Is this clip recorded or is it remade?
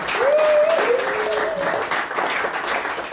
recorded